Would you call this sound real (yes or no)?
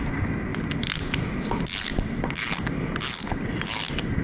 yes